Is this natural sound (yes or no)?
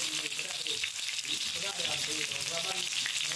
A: yes